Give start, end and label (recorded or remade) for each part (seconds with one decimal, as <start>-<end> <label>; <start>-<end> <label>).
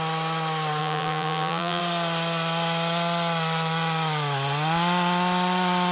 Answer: 0.0-0.8 recorded; 0.8-1.8 remade; 1.8-5.9 recorded